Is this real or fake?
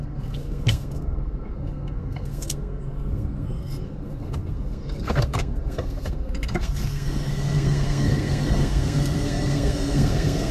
fake